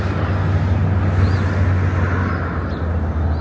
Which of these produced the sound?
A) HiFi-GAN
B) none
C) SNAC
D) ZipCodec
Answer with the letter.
B